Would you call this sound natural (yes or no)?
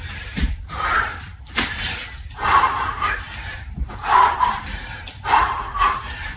no